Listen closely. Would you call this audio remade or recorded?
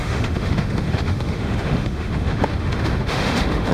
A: remade